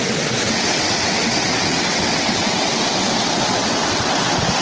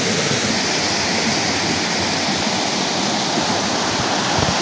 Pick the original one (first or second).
second